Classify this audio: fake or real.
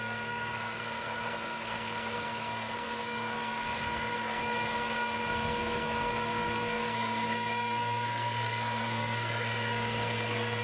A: fake